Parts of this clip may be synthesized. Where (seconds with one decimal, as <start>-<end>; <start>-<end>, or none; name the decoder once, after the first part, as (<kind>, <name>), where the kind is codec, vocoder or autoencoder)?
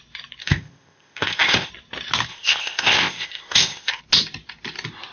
0.4-1.7 (codec, ZipCodec); 2.3-4.0